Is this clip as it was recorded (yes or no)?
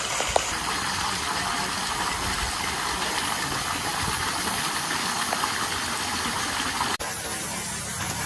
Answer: yes